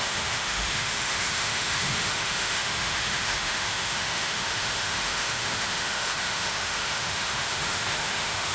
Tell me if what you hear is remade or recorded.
remade